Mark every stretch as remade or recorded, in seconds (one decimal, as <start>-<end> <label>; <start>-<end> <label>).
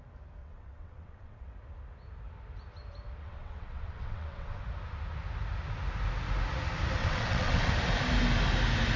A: 0.0-0.4 recorded; 0.4-1.5 remade; 1.5-3.2 recorded; 3.2-4.6 remade; 4.6-7.0 recorded; 7.0-7.7 remade; 7.7-9.0 recorded